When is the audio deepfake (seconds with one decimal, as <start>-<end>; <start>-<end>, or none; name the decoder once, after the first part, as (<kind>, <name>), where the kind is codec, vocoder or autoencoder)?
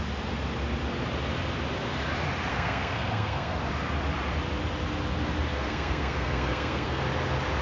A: 2.5-3.7 (codec, SNAC); 5.5-7.0